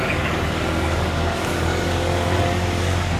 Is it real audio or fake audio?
fake